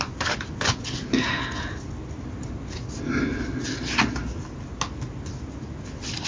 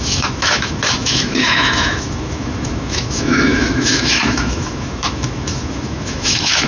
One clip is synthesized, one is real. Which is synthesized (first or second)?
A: second